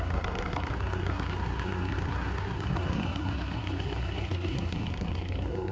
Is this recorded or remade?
remade